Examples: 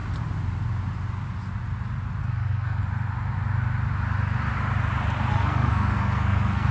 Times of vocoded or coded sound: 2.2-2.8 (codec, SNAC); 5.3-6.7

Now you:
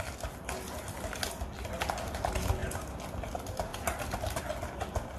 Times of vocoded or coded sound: none